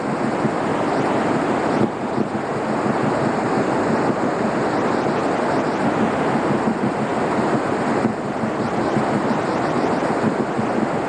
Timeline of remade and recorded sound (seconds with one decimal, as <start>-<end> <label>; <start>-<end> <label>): 0.0-11.1 recorded

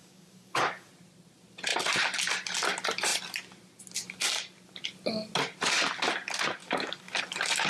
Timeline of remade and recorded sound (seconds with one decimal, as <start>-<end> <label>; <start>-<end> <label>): 0.0-0.9 remade; 0.9-6.6 recorded; 6.6-7.2 remade; 7.2-7.7 recorded